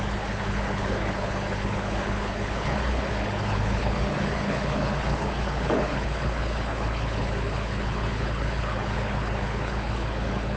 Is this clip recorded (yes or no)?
no